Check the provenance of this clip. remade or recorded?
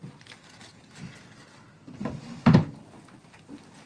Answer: recorded